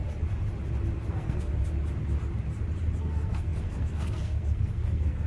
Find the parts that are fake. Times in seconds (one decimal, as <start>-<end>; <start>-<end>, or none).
1.1-1.5; 3.0-5.3